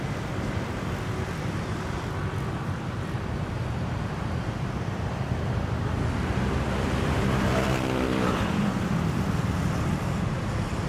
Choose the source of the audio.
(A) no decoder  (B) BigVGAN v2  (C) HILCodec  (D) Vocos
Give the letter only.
B